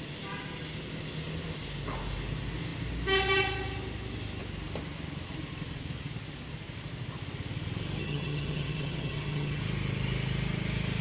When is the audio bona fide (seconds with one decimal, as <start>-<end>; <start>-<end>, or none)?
0.0-8.0; 9.6-11.0